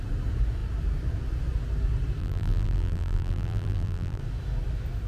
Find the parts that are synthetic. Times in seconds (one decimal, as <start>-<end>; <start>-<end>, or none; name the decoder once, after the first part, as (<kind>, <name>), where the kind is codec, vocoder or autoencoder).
2.2-4.2 (vocoder, BigVGAN v2)